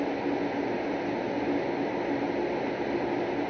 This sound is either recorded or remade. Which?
recorded